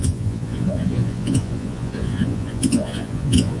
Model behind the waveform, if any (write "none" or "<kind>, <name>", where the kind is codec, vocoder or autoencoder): vocoder, Vocos